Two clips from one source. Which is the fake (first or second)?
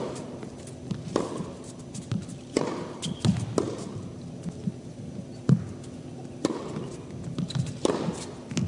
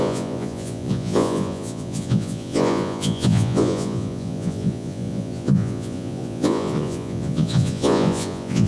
second